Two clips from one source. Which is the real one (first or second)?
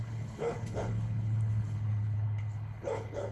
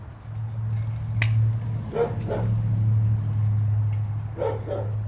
second